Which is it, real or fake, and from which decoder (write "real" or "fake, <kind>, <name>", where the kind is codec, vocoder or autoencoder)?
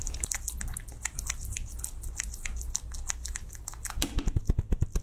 real